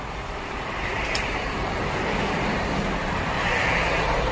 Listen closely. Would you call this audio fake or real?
fake